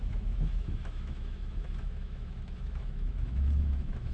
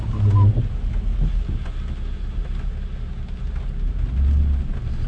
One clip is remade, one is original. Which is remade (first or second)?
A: first